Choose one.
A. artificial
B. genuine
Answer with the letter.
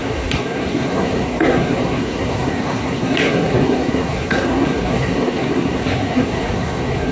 A